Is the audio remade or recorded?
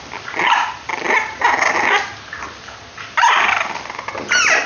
recorded